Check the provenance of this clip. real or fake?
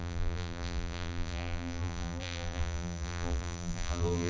fake